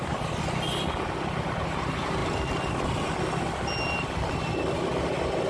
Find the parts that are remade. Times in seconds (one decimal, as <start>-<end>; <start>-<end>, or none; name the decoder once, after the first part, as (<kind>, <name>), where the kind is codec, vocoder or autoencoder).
none